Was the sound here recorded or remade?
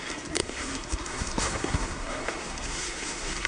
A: remade